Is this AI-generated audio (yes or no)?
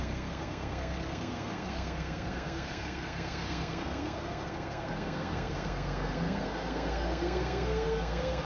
yes